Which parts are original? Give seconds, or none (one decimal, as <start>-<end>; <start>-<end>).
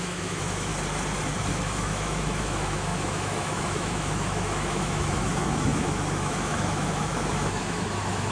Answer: 0.7-1.5